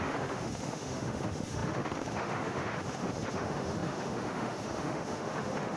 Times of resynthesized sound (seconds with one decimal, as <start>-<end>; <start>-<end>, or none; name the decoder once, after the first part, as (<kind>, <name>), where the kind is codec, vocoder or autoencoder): 0.0-5.8 (autoencoder, DAC-VAE)